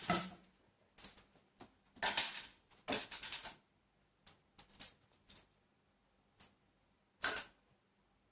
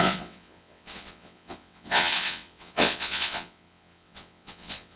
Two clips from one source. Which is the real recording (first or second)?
first